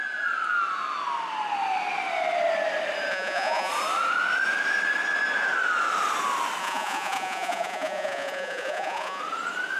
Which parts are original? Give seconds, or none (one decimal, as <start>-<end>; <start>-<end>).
0.0-3.1; 3.7-6.6; 9.2-9.8